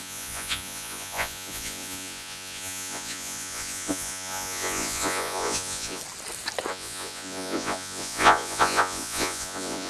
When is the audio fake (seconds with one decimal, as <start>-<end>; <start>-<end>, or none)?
0.0-6.0; 6.7-9.9